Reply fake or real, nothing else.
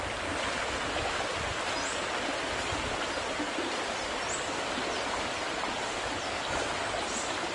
real